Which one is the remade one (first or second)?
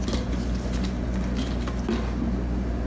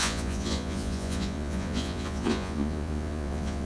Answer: second